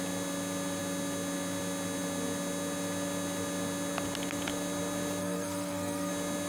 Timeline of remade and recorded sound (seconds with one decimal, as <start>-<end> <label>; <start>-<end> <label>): 0.0-5.2 recorded; 5.2-6.1 remade; 6.1-6.5 recorded